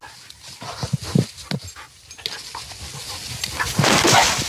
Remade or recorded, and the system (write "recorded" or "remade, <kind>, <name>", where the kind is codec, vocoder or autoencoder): recorded